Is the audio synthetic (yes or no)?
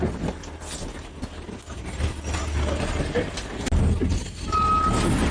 no